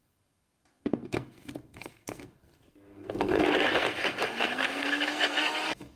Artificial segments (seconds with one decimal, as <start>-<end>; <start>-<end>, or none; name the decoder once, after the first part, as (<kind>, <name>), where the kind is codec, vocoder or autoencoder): 0.0-6.0 (codec, SNAC)